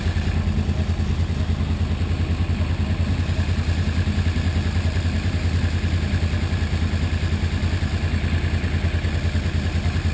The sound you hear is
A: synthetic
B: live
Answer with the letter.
B